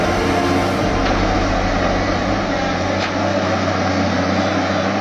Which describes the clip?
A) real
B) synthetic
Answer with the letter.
A